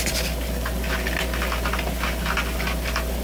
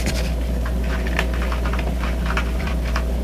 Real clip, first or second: first